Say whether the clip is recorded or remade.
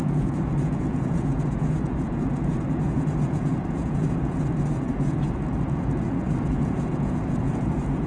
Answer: remade